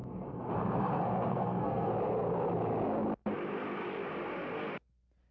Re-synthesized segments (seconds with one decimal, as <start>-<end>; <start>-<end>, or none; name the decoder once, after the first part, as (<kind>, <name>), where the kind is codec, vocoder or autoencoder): 0.0-1.9 (codec, SNAC)